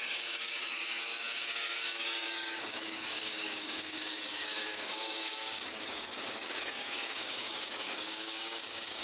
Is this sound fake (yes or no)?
yes